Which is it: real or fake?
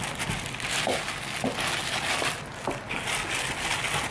real